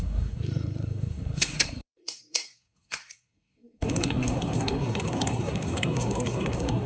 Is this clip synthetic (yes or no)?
yes